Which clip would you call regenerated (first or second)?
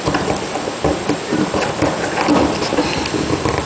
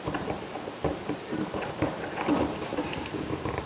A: second